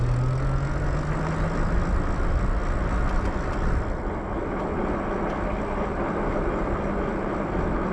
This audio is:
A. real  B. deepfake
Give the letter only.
A